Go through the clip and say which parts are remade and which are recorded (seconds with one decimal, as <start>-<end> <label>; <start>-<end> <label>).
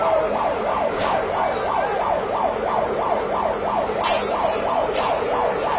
0.0-0.7 recorded; 0.7-1.2 remade; 1.2-5.8 recorded